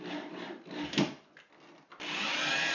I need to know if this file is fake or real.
real